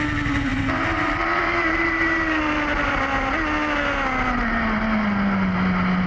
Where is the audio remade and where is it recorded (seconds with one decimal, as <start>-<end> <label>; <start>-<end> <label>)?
0.0-0.5 recorded; 0.5-2.9 remade; 2.9-6.1 recorded